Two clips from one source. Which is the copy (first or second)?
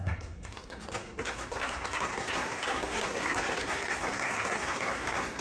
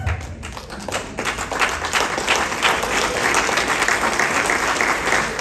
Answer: first